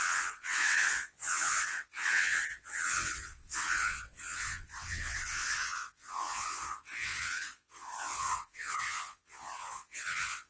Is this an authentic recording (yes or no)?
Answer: no